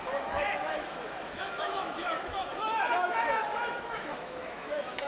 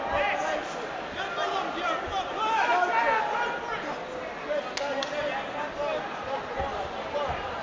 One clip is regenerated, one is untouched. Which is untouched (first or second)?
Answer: second